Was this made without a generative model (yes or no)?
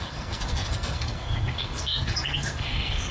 no